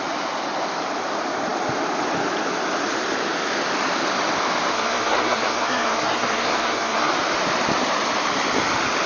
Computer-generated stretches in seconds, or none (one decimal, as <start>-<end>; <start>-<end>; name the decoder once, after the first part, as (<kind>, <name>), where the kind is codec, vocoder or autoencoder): 4.7-7.1 (codec, SNAC)